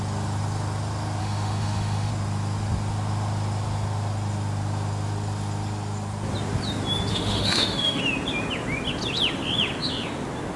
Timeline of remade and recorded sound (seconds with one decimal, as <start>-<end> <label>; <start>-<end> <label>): 0.0-1.2 recorded; 1.2-2.1 remade; 2.1-7.1 recorded; 7.1-8.0 remade; 8.0-10.6 recorded